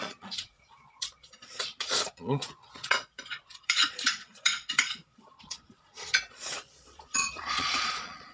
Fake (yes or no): yes